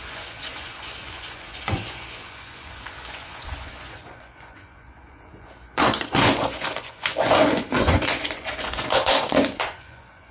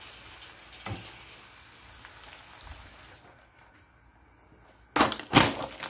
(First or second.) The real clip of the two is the second